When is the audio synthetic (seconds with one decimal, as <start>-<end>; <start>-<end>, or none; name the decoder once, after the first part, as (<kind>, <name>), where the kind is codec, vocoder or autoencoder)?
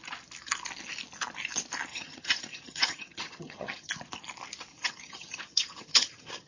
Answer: 1.9-3.9 (vocoder, HiFi-GAN); 4.7-6.5